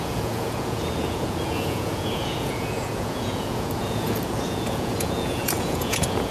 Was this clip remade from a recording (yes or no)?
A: yes